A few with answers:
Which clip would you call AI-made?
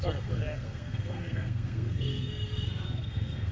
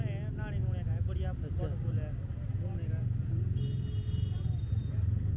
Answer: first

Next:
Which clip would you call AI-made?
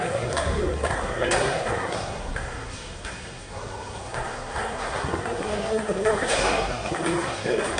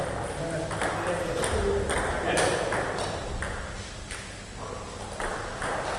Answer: first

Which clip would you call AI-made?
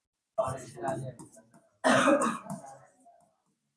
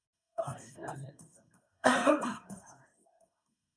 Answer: second